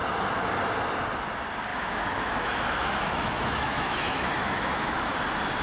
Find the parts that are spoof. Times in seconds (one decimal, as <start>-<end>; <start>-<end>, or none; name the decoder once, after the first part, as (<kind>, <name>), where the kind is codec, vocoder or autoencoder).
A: 1.7-5.1 (autoencoder, DAC-VAE)

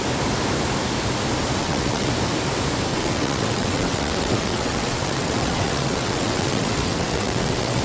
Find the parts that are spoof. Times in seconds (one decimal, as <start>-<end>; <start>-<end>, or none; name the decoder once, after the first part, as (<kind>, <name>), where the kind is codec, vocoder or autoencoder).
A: 1.6-2.1 (vocoder, WaveNeXt); 2.9-7.8

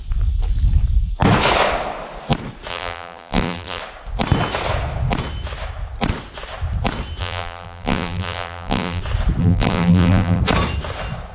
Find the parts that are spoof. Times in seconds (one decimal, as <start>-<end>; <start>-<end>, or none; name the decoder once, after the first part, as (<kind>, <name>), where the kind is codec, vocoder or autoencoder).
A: 2.7-3.8 (vocoder, BigVGAN v2); 7.2-9.0; 9.4-10.4

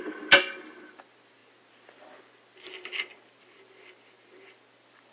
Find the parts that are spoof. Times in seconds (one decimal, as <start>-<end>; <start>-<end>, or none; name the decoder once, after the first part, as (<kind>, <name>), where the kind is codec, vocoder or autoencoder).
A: none

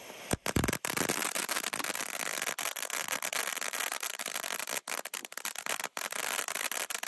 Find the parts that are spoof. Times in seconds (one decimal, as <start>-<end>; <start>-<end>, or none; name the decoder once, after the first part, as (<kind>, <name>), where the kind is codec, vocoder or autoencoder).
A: 3.9-4.5 (vocoder, BigVGAN v2)

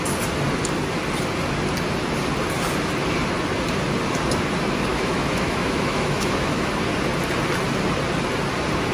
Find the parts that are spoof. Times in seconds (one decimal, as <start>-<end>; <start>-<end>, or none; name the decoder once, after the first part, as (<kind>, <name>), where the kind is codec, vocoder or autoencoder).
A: 4.9-6.7 (autoencoder, DAC-VAE)

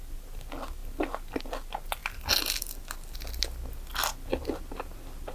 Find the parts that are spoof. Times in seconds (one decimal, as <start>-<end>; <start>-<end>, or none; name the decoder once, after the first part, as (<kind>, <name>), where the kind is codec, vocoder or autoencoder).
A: none